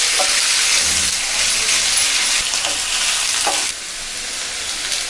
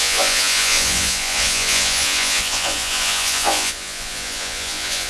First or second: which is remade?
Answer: second